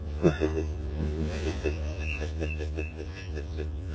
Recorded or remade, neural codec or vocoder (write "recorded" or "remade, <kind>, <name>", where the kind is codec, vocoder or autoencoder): remade, vocoder, Vocos